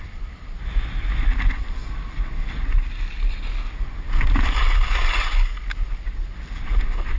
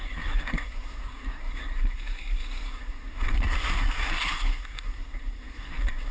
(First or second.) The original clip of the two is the first